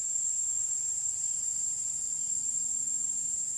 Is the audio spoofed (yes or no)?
yes